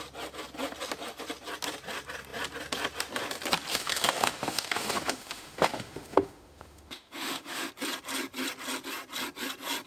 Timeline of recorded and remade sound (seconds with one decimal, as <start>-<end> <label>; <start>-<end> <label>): 0.0-3.7 recorded; 3.7-7.7 remade; 7.7-9.9 recorded